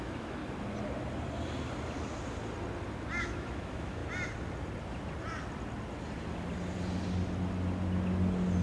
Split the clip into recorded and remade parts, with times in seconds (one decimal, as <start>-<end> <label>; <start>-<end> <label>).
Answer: 0.0-0.4 remade; 0.4-3.2 recorded; 3.2-4.0 remade; 4.0-8.6 recorded

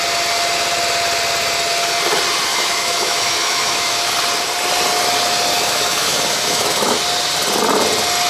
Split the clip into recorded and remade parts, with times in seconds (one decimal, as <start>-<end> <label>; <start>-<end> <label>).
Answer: 0.0-2.5 recorded; 2.5-4.1 remade; 4.1-5.5 recorded; 5.5-7.0 remade; 7.0-8.3 recorded